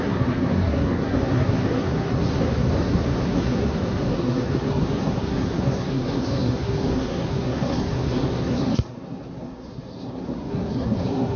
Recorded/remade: remade